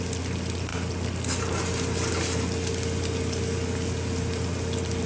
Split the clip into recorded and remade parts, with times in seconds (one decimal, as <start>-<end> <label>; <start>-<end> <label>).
0.0-5.1 recorded